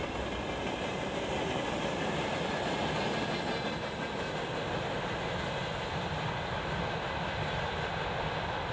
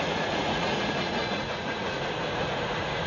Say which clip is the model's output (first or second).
second